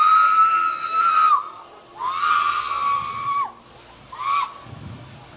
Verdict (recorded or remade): recorded